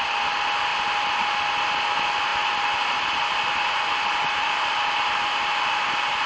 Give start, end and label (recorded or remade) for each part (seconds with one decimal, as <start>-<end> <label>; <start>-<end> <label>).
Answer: 0.0-2.3 recorded; 2.3-2.9 remade; 2.9-6.3 recorded